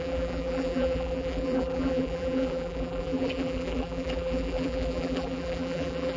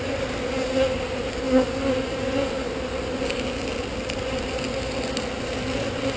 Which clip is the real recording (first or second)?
second